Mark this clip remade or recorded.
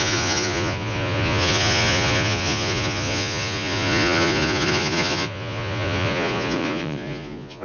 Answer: remade